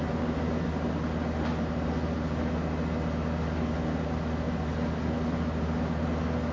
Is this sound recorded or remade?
recorded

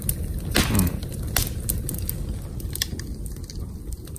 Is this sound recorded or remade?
recorded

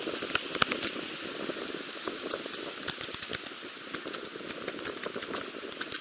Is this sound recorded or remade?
recorded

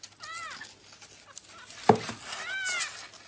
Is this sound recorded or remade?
recorded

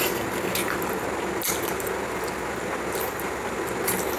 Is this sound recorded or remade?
recorded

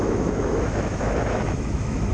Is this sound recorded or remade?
remade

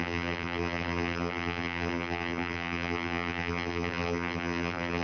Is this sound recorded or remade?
remade